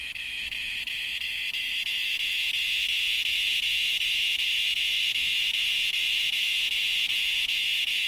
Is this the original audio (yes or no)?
no